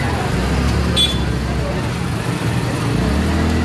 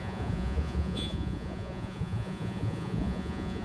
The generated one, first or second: second